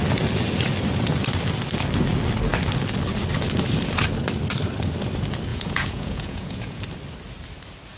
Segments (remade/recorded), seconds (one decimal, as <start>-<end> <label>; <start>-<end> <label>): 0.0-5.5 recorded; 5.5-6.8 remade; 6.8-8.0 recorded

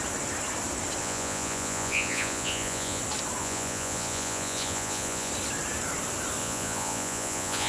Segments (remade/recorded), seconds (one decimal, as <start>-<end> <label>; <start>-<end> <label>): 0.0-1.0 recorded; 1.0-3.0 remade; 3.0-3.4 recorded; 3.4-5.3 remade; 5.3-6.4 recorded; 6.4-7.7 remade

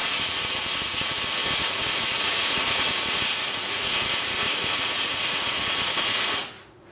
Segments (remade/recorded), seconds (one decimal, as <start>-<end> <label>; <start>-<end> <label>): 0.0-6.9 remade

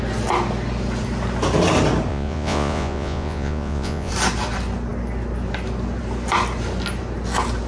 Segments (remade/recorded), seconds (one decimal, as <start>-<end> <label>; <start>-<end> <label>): 0.0-2.1 recorded; 2.1-4.1 remade; 4.1-7.7 recorded

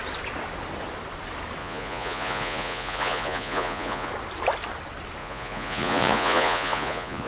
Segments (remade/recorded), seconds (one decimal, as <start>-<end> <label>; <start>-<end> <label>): 0.0-1.6 recorded; 1.6-4.1 remade; 4.1-5.2 recorded; 5.2-7.3 remade